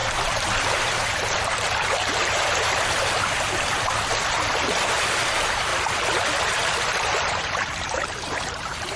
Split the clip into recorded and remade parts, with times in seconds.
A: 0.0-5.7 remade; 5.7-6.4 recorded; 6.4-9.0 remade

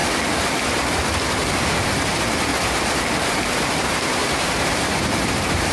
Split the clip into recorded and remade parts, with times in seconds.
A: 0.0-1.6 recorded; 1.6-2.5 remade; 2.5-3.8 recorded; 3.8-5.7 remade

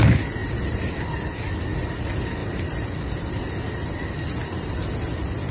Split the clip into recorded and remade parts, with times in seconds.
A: 0.0-0.4 recorded; 0.4-1.0 remade; 1.0-5.5 recorded

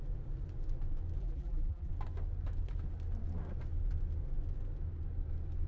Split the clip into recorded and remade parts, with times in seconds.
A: 0.0-1.2 recorded; 1.2-1.9 remade; 1.9-5.7 recorded

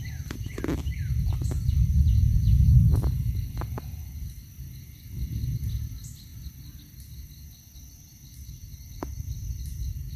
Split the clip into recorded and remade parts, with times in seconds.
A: 0.0-10.2 recorded

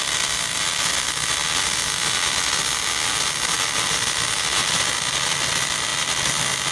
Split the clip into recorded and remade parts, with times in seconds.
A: 0.0-1.4 remade; 1.4-3.2 recorded; 3.2-6.7 remade